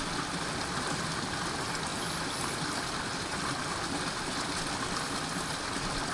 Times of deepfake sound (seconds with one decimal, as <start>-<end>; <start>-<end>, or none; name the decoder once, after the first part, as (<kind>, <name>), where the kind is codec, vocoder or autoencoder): none